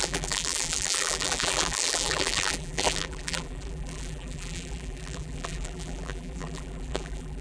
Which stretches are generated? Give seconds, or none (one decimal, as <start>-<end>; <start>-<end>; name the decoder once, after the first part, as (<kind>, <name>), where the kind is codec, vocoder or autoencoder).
0.0-7.4 (vocoder, BigVGAN v2)